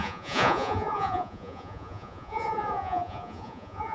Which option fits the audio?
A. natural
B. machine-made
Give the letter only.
B